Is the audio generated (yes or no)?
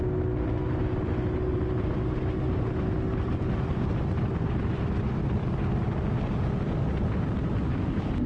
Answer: no